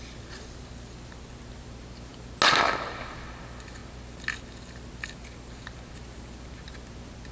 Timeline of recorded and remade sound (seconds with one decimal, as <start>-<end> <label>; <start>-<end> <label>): 0.0-7.3 recorded